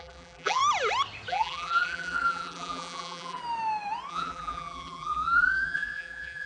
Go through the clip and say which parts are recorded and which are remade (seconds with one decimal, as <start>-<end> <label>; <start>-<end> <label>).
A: 0.0-0.6 remade; 0.6-1.3 recorded; 1.3-3.4 remade; 3.4-4.1 recorded; 4.1-6.5 remade